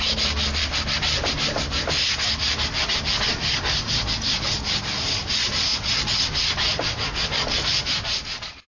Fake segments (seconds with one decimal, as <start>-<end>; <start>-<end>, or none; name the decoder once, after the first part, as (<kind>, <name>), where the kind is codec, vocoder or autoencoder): none